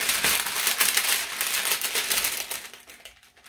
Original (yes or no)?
yes